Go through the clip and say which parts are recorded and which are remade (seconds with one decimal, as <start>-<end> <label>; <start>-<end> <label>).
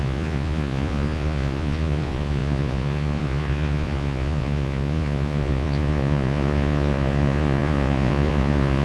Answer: 0.0-8.8 remade